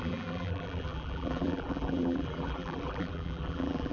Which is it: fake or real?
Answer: fake